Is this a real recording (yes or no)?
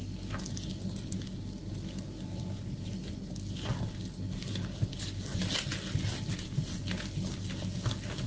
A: yes